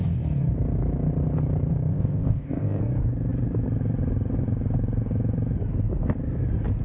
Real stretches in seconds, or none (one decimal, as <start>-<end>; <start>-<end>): 0.0-1.9; 2.8-6.8